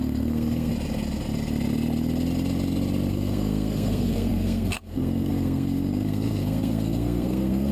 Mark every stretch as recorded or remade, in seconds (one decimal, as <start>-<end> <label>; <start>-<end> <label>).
0.0-0.7 remade; 0.7-3.1 recorded; 3.1-7.7 remade